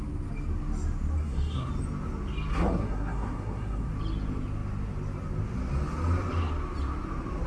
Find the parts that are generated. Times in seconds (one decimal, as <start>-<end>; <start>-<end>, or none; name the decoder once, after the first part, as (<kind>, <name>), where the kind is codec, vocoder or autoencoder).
1.2-1.7 (codec, SNAC); 2.5-3.9